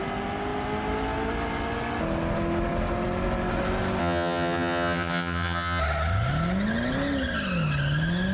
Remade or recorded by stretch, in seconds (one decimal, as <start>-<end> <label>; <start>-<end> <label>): 0.0-4.0 recorded; 4.0-5.8 remade; 5.8-8.3 recorded